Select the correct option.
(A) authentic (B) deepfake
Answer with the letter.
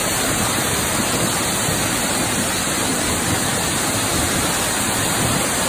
A